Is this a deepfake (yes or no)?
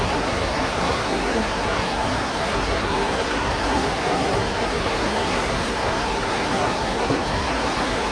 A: yes